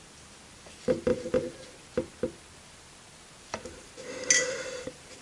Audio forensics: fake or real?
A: real